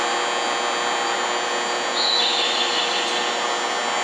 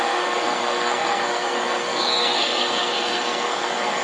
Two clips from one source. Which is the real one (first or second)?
first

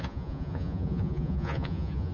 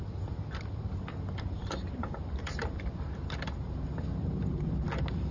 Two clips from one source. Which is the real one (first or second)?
second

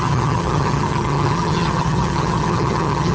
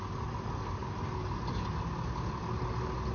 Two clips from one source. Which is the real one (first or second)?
second